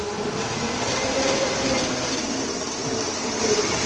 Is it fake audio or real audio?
real